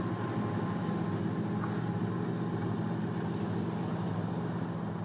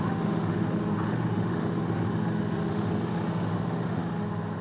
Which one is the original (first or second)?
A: first